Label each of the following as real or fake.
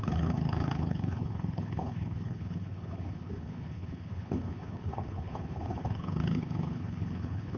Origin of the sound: fake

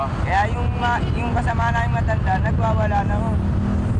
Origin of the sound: real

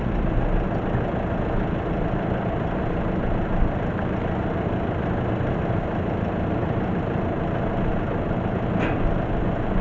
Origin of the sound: real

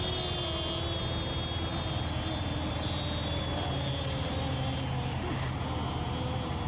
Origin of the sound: real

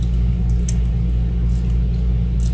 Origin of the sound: real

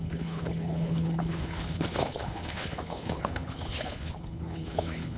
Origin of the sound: fake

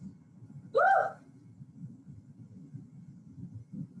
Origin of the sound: real